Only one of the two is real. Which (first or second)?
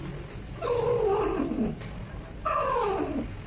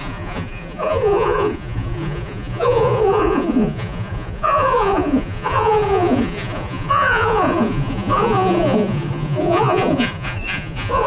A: first